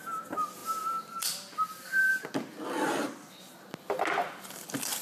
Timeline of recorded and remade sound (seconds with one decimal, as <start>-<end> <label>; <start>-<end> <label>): 0.0-5.0 recorded